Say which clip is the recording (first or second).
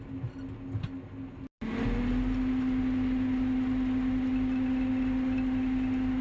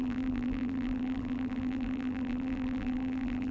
first